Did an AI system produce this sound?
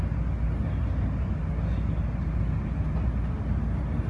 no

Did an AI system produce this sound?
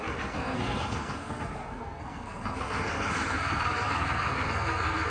yes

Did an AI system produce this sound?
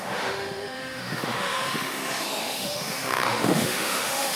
yes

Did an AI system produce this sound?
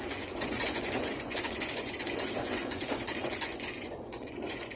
yes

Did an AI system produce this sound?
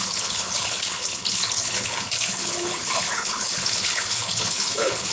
yes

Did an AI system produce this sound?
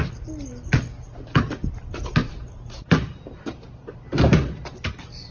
no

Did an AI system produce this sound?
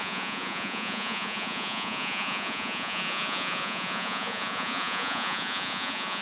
yes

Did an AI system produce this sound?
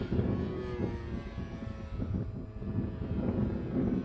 no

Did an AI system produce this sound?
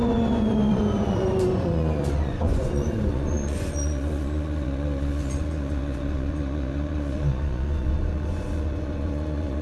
yes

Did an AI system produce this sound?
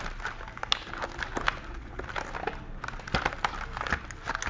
no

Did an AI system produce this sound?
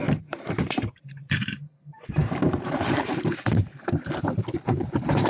yes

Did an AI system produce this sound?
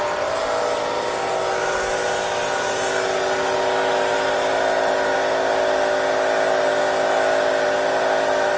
no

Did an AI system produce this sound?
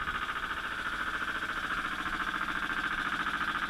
no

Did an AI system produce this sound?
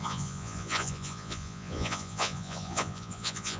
yes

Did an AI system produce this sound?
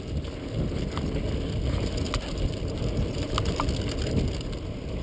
no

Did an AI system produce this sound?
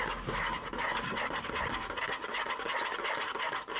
no